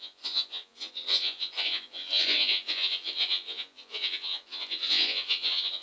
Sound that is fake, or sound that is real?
fake